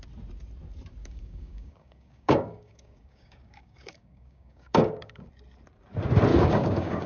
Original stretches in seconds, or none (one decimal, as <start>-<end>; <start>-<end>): 0.0-1.0; 5.3-6.3